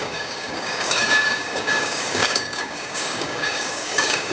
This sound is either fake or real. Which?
fake